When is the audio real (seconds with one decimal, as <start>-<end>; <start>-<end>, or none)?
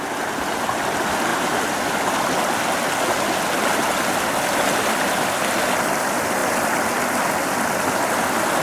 0.0-1.3; 2.0-8.6